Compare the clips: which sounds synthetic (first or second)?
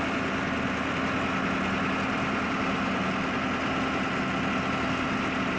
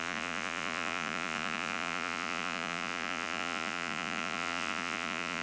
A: second